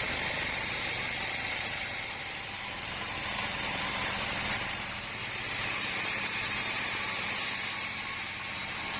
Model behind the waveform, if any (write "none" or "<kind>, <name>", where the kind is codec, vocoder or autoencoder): vocoder, BigVGAN v2